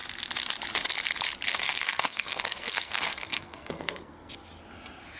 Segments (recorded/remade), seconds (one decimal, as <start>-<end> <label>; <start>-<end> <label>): 0.0-1.5 recorded; 1.5-4.3 remade; 4.3-5.2 recorded